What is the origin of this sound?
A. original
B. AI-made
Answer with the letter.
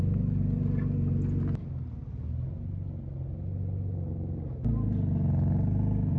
A